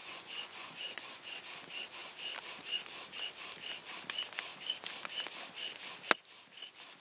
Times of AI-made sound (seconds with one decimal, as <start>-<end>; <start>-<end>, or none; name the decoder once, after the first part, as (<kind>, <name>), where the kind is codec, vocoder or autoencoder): 0.0-1.4 (vocoder, Vocos)